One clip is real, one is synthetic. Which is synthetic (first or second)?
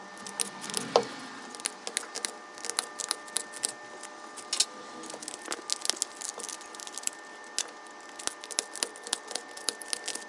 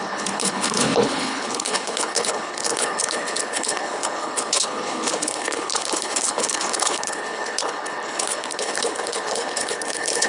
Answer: second